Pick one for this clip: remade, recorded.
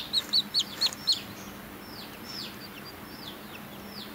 recorded